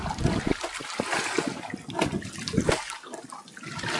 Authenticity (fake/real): real